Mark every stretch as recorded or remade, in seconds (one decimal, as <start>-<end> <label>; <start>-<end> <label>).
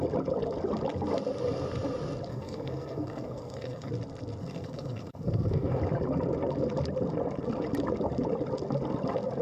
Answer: 0.0-2.3 recorded; 2.3-3.9 remade; 3.9-4.4 recorded; 4.4-5.8 remade; 5.8-9.4 recorded